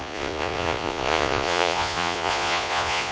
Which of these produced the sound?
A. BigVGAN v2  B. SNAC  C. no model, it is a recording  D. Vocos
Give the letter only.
D